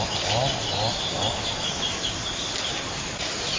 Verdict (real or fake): real